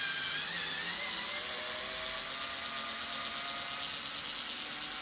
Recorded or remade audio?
recorded